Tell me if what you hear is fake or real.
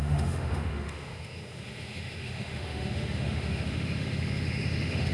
fake